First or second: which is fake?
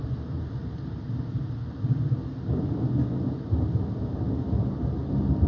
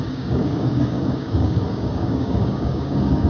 second